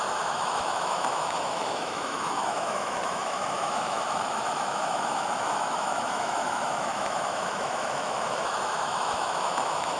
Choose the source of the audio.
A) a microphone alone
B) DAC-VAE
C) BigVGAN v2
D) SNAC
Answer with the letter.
B